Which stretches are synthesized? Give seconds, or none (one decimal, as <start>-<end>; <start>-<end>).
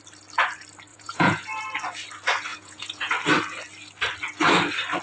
0.9-1.6; 2.5-3.1